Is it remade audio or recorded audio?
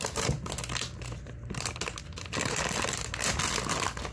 recorded